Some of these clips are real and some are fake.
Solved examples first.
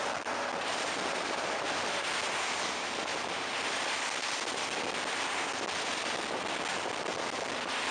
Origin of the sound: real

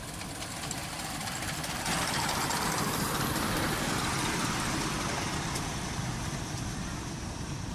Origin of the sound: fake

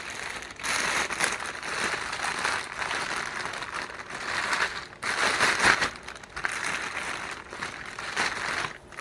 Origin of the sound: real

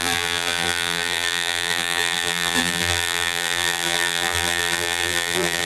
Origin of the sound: fake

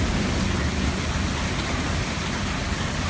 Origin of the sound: real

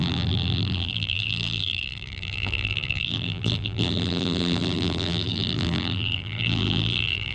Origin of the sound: fake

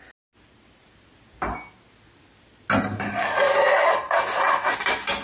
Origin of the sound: real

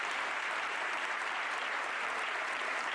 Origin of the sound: fake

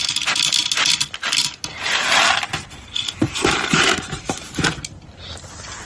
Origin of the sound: real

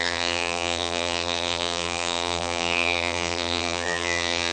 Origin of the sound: fake